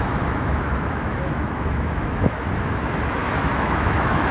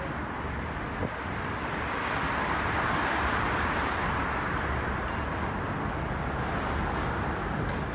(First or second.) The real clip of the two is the second